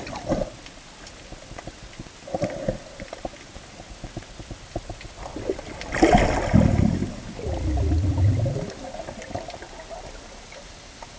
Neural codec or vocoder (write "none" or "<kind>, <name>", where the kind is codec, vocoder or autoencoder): none